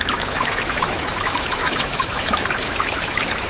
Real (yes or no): no